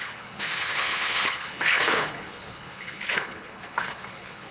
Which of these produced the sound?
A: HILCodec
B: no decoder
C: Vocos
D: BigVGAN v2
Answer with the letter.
A